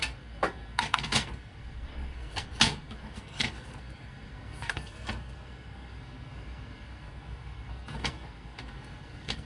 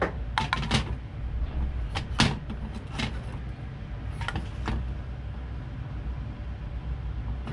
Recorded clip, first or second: second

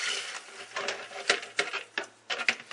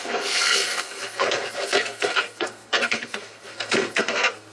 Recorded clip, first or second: first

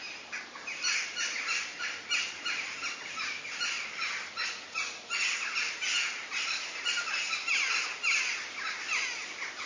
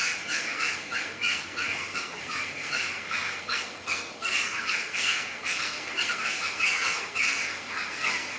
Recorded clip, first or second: first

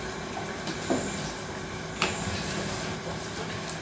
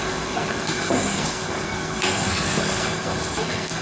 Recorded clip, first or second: first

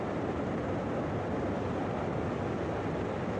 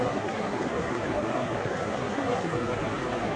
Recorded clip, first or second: first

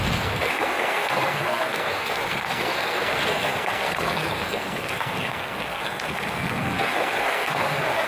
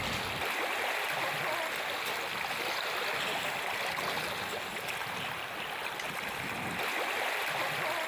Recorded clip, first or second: second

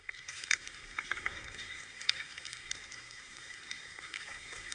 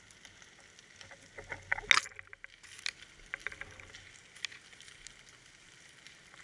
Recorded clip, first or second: second